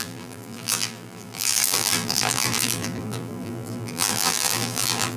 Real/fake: fake